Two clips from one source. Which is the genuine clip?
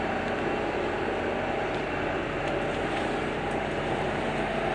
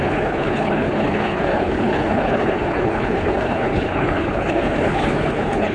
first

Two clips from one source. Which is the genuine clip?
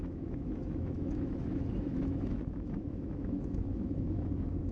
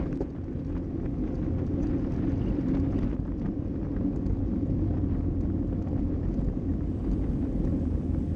second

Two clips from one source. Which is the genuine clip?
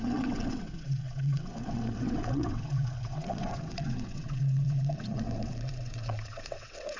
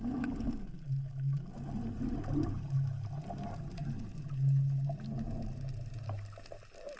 second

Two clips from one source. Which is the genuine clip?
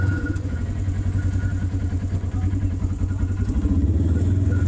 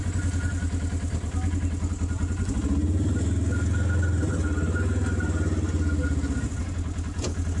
second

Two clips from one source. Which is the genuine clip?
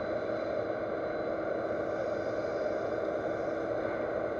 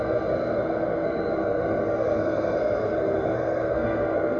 first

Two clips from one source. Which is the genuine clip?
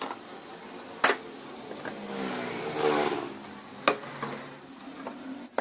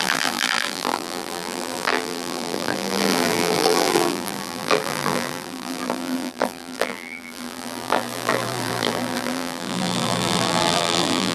first